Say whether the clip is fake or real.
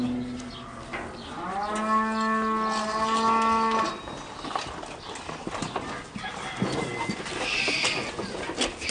real